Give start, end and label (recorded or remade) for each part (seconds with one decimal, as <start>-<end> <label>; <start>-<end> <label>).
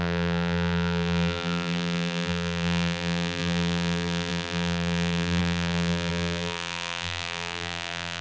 0.0-8.2 remade